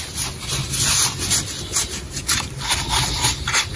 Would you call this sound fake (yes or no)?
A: no